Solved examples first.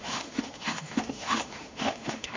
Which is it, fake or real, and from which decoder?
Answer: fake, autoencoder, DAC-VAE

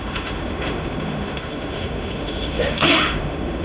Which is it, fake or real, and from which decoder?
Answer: fake, autoencoder, DAC-VAE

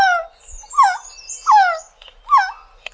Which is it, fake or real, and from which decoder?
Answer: real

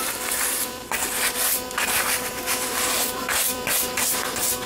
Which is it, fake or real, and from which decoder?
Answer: fake, vocoder, BigVGAN v2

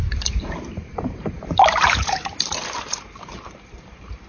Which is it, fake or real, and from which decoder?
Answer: fake, vocoder, BigVGAN v2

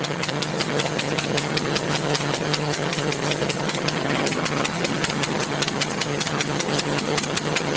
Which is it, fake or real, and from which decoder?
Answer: fake, vocoder, HiFi-GAN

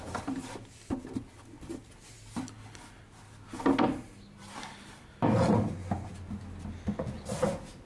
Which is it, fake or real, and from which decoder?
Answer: real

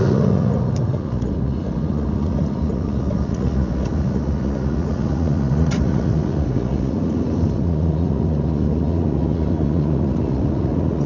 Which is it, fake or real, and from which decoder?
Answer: fake, vocoder, Vocos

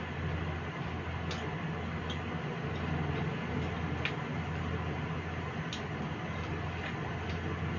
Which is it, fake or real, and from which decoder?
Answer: real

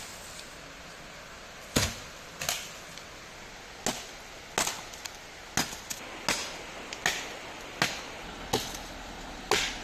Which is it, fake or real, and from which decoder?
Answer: real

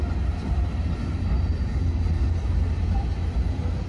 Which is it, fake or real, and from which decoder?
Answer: real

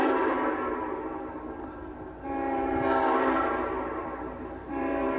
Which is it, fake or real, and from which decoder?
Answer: fake, vocoder, BigVGAN v2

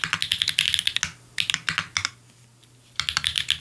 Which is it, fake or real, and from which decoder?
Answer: real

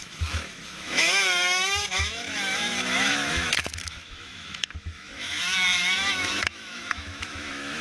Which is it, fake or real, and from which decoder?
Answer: fake, autoencoder, DAC-VAE